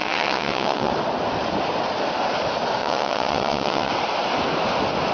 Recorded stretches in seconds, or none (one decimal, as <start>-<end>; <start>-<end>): 0.9-2.8; 3.9-5.1